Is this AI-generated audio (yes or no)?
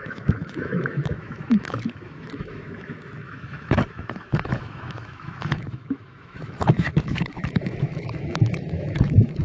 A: yes